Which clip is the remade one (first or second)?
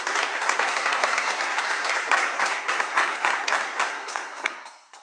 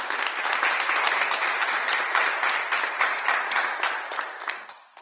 first